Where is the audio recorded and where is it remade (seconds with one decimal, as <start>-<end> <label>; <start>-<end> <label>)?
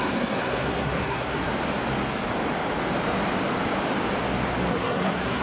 0.0-1.5 remade; 1.5-4.7 recorded; 4.7-5.4 remade